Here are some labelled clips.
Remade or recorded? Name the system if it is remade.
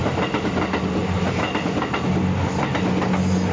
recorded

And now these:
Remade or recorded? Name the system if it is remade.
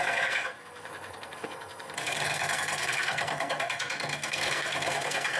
remade, codec, SNAC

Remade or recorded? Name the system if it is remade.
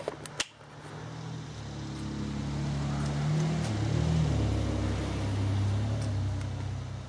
recorded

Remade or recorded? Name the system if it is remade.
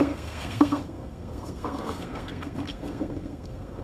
remade, codec, SNAC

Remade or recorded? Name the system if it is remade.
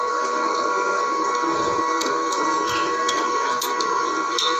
remade, codec, SNAC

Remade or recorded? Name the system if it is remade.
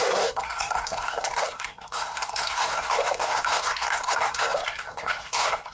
remade, codec, SNAC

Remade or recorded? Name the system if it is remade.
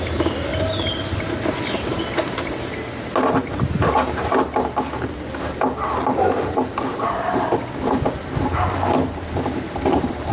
recorded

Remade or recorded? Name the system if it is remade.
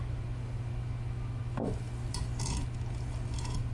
recorded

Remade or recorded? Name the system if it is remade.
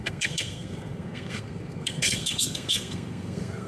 remade, codec, SNAC